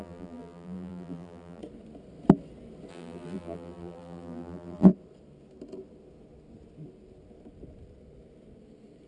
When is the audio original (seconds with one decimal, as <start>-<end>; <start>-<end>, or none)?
1.6-2.9; 4.9-9.1